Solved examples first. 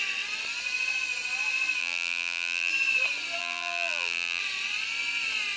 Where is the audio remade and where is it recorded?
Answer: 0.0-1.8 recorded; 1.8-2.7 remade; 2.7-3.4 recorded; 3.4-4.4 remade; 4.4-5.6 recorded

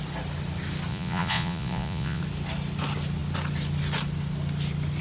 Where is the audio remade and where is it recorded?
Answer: 0.0-0.9 recorded; 0.9-2.2 remade; 2.2-5.0 recorded

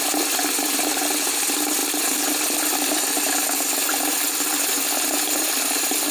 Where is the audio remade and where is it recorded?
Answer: 0.0-6.1 recorded

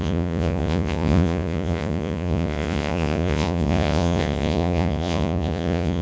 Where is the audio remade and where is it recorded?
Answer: 0.0-6.0 remade